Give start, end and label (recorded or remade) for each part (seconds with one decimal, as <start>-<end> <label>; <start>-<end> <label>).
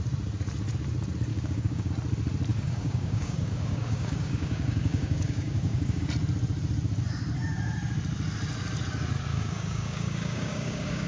0.0-1.3 recorded; 1.3-1.9 remade; 1.9-2.5 recorded; 2.5-6.0 remade; 6.0-9.3 recorded; 9.3-11.1 remade